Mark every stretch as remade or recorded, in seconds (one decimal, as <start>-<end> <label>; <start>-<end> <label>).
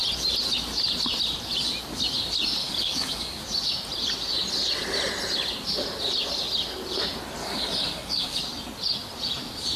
0.0-2.6 recorded; 2.6-3.4 remade; 3.4-7.4 recorded; 7.4-8.4 remade; 8.4-9.8 recorded